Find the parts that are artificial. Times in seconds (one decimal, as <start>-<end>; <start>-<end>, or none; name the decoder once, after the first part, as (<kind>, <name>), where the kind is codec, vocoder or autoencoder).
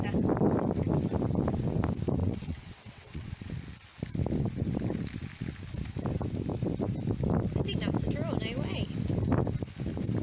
2.2-3.5 (vocoder, WaveNeXt)